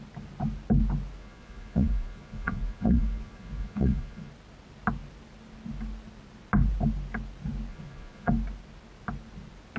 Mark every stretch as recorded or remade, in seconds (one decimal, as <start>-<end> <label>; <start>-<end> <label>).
0.0-1.2 recorded; 1.2-4.3 remade; 4.3-7.7 recorded; 7.7-8.3 remade; 8.3-9.8 recorded